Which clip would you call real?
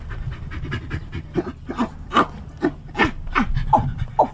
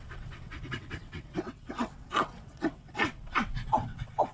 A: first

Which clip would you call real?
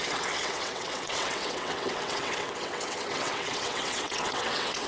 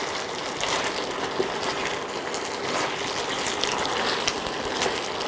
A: second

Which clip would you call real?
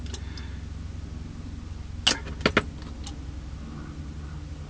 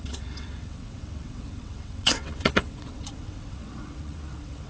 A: first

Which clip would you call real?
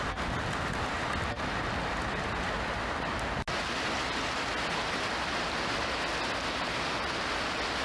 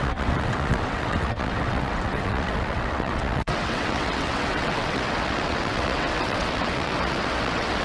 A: first